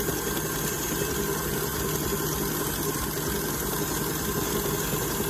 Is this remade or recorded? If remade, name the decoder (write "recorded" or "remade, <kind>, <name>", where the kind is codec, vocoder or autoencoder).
recorded